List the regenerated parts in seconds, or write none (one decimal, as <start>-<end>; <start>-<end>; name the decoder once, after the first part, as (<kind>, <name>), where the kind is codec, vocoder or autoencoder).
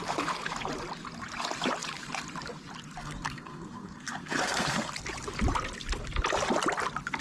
3.0-4.9 (codec, SNAC)